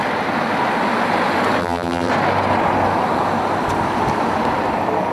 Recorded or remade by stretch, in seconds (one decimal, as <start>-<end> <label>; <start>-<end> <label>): 0.0-1.6 recorded; 1.6-2.1 remade; 2.1-5.1 recorded